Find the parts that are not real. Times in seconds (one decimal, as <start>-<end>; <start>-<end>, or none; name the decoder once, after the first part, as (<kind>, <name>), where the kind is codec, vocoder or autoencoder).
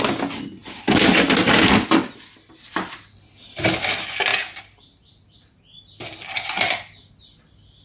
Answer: none